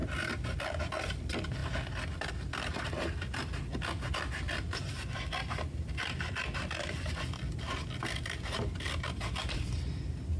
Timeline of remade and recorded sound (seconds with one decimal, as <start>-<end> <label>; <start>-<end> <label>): 0.0-10.4 recorded